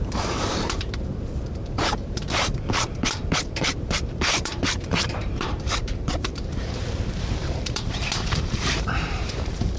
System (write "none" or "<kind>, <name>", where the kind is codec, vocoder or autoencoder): vocoder, BigVGAN v2